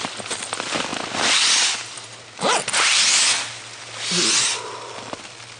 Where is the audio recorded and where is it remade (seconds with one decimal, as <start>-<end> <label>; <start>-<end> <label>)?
0.0-5.6 recorded